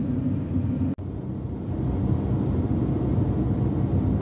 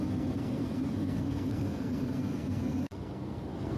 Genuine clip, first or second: first